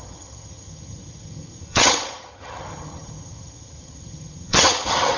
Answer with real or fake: fake